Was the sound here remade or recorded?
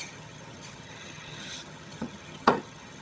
remade